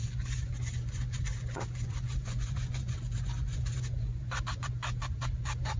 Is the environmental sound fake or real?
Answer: fake